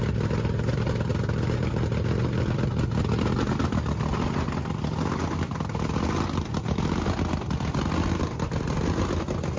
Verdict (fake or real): real